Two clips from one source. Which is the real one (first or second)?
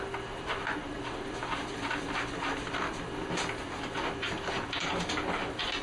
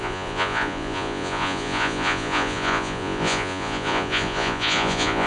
first